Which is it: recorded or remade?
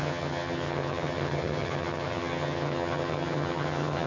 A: remade